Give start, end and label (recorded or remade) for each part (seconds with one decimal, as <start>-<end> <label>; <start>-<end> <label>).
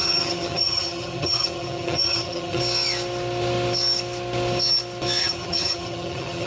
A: 0.0-2.6 remade; 2.6-5.2 recorded; 5.2-6.5 remade